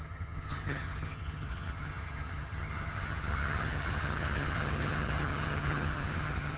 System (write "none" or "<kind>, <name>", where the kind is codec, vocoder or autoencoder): vocoder, HiFi-GAN